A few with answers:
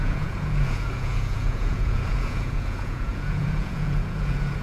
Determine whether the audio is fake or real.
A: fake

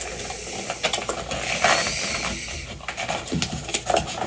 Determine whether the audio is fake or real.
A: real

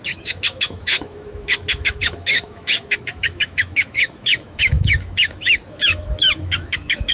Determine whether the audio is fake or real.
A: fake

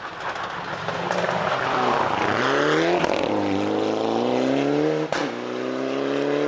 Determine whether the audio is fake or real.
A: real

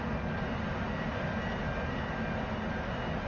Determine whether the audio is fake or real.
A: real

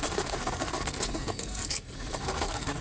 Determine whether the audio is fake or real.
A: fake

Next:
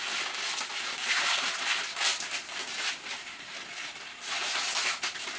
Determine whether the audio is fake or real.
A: real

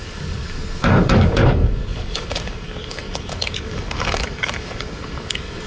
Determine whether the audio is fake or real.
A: fake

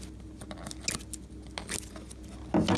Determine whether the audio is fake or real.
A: real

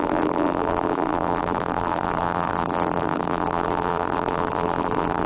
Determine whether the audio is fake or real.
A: fake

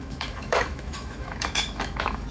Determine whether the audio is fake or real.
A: fake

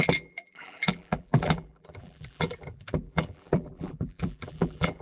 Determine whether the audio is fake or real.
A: fake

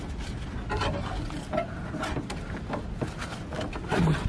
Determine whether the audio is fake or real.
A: real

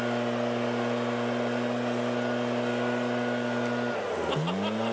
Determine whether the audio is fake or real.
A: real